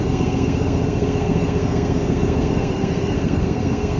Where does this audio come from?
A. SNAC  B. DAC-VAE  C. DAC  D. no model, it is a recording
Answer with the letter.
A